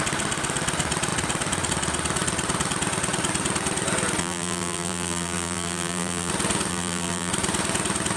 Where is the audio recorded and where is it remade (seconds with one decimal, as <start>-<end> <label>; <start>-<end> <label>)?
0.0-4.2 recorded; 4.2-6.3 remade; 6.3-6.7 recorded; 6.7-7.3 remade; 7.3-8.2 recorded